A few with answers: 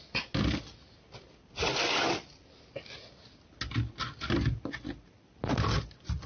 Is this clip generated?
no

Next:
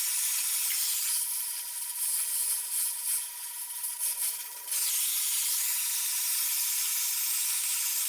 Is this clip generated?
no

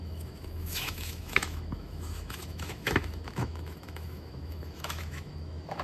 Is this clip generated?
yes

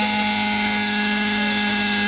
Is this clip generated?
no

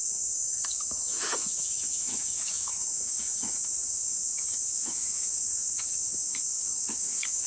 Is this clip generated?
yes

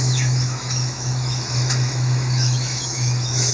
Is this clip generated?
yes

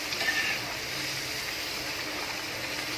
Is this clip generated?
no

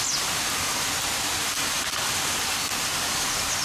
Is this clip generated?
no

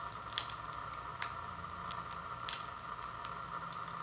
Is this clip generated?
no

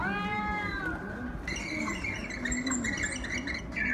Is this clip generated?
no